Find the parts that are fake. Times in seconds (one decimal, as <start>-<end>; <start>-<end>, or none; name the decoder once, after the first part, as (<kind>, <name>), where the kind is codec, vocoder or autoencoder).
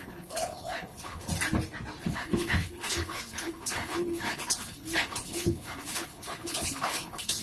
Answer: 0.0-1.3 (codec, HILCodec); 2.0-7.4